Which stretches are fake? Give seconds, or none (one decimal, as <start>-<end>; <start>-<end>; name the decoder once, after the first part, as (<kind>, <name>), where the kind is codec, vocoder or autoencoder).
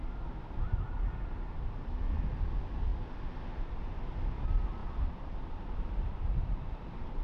4.8-6.8 (vocoder, BigVGAN v2)